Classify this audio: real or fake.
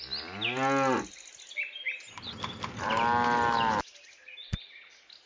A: real